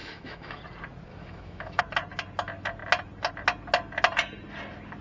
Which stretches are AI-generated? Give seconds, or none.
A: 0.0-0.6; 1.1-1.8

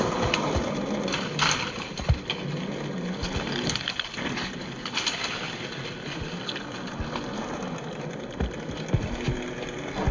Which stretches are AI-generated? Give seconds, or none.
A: none

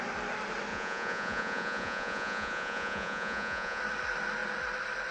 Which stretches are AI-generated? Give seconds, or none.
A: 0.7-3.8